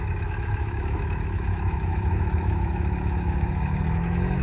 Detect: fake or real fake